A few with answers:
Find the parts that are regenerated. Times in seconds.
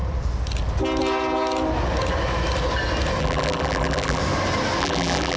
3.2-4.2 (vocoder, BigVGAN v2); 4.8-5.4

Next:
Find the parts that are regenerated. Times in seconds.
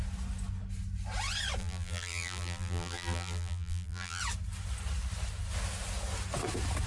1.6-4.2 (vocoder, BigVGAN v2)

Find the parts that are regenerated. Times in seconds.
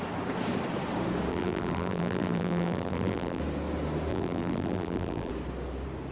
1.3-3.4 (vocoder, BigVGAN v2); 4.1-5.3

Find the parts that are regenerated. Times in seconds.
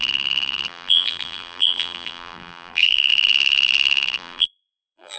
0.0-5.2 (vocoder, BigVGAN v2)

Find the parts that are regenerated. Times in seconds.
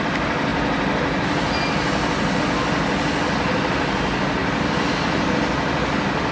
none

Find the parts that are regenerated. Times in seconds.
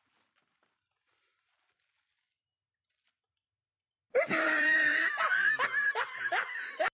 3.6-6.2 (vocoder, BigVGAN v2)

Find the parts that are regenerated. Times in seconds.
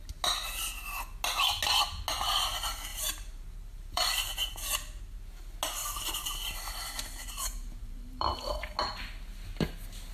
2.9-4.6 (vocoder, BigVGAN v2); 5.8-8.5